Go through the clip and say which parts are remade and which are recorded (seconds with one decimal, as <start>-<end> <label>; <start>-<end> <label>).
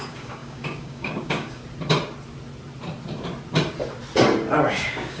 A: 0.0-1.6 remade; 1.6-4.7 recorded; 4.7-5.2 remade